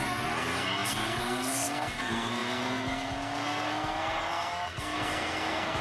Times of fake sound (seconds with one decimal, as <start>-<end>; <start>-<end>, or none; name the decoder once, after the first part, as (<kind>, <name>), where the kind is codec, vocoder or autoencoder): 0.0-5.8 (codec, SNAC)